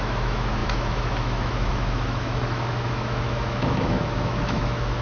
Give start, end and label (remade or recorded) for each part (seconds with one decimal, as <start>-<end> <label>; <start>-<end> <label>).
0.0-5.0 remade